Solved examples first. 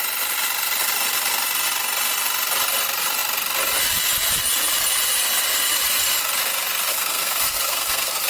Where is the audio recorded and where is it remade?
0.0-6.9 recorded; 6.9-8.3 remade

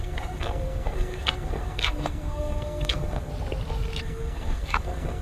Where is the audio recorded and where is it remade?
0.0-3.3 remade; 3.3-4.0 recorded; 4.0-5.2 remade

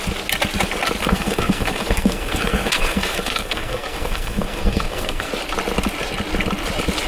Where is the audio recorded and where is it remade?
0.0-1.0 recorded; 1.0-5.3 remade; 5.3-7.1 recorded

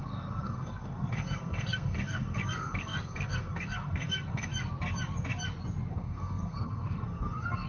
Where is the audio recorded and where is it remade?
0.0-4.5 remade; 4.5-5.9 recorded; 5.9-7.7 remade